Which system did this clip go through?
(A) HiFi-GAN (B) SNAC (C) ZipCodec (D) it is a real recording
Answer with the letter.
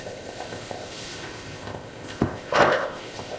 C